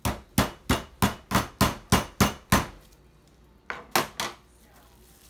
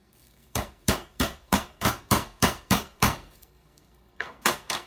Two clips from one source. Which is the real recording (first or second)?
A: first